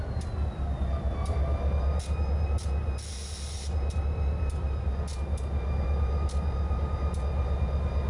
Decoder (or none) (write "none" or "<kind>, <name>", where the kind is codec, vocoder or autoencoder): none